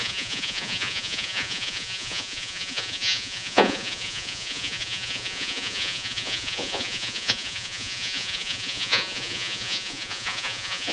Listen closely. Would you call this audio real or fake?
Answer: fake